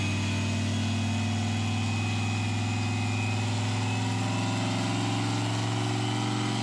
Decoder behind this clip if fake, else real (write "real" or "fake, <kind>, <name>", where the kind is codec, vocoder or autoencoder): real